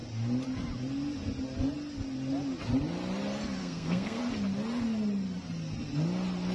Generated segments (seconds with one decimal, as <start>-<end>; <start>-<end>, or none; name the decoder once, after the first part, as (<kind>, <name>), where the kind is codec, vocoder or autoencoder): 3.6-4.2 (codec, SNAC)